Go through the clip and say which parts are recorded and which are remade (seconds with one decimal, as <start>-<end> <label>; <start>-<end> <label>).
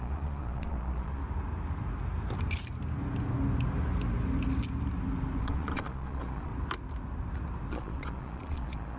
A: 0.0-1.2 remade; 1.2-5.4 recorded; 5.4-6.5 remade; 6.5-7.7 recorded; 7.7-9.0 remade